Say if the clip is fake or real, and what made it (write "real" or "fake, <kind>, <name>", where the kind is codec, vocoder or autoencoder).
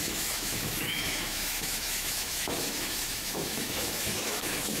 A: fake, autoencoder, DAC-VAE